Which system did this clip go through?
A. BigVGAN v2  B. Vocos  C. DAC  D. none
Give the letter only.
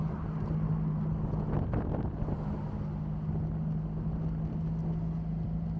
D